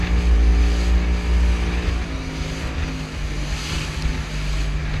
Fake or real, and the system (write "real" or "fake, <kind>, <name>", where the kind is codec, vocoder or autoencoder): real